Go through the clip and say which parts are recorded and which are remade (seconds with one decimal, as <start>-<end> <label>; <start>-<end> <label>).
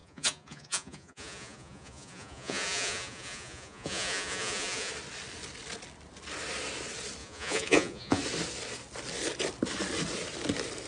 0.0-4.9 remade; 4.9-7.2 recorded; 7.2-8.2 remade; 8.2-10.9 recorded